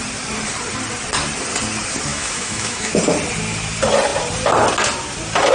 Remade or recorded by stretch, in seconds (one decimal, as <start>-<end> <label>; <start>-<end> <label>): 0.0-2.1 recorded; 2.1-2.9 remade; 2.9-5.5 recorded

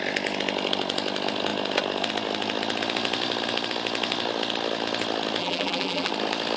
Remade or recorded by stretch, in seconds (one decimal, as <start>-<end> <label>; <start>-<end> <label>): 0.0-5.4 recorded; 5.4-6.1 remade; 6.1-6.6 recorded